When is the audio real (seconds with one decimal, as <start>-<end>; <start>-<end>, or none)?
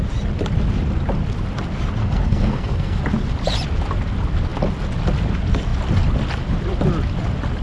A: 0.0-2.0; 3.0-7.6